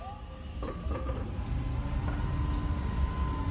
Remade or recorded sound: recorded